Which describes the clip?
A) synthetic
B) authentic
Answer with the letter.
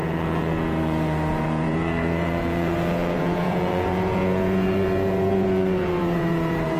A